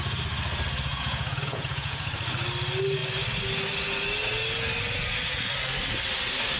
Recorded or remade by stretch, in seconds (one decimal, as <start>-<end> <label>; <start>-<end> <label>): 0.0-0.9 recorded; 0.9-2.1 remade; 2.1-6.6 recorded